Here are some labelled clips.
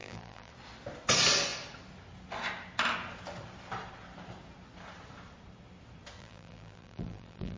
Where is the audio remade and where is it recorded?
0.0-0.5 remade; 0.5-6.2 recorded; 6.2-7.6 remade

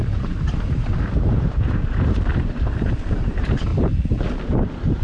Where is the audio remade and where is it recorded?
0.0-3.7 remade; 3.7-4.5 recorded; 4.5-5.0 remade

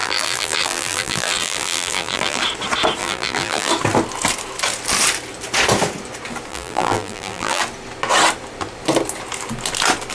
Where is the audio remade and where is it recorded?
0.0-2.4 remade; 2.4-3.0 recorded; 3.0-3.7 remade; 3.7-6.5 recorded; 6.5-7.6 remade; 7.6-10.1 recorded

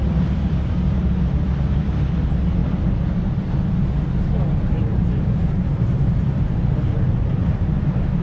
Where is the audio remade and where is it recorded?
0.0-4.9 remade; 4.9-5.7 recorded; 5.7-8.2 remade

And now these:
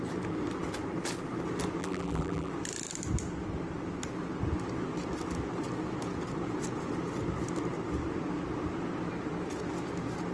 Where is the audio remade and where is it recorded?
0.0-1.8 recorded; 1.8-2.5 remade; 2.5-10.3 recorded

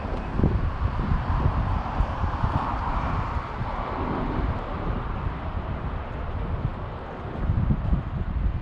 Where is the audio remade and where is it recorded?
0.0-8.6 remade

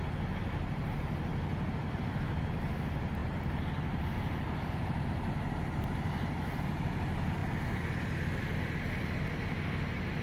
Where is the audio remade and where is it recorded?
0.0-3.2 recorded; 3.2-5.1 remade; 5.1-10.2 recorded